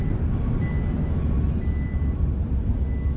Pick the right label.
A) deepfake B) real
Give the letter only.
B